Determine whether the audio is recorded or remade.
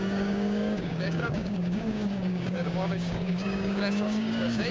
remade